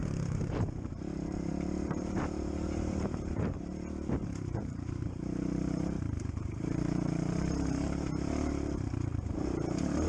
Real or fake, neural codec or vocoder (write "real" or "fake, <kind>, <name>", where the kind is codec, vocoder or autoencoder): fake, vocoder, BigVGAN v2